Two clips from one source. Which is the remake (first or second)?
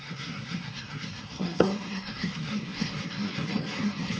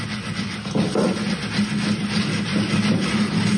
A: first